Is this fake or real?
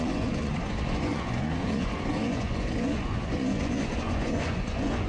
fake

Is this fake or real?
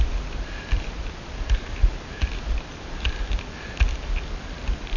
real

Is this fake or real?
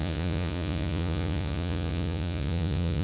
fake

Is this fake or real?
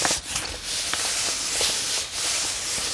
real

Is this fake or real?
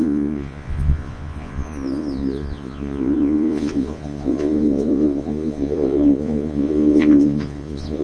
fake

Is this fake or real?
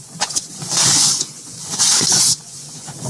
fake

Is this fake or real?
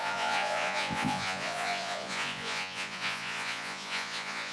fake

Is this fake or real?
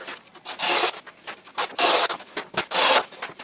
real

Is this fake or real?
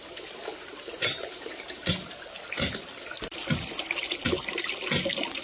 real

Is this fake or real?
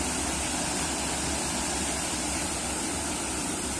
real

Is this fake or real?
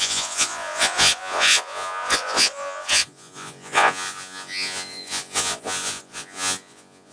fake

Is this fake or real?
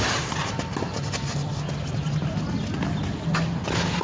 real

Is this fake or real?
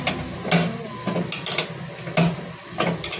real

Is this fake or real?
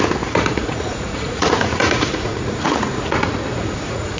fake